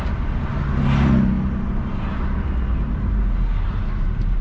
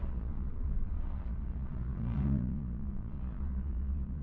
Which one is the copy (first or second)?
second